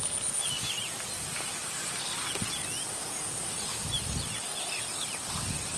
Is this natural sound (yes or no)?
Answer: yes